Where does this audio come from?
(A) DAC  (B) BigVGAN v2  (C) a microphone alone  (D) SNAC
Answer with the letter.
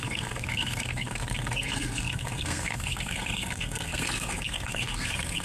D